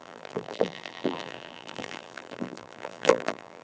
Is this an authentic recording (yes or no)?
no